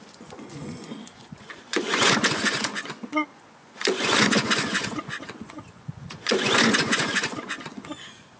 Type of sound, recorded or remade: remade